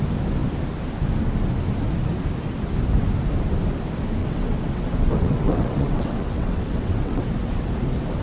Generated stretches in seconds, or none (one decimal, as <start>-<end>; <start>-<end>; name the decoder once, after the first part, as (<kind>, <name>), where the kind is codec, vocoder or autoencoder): 4.2-7.7 (vocoder, WaveNeXt)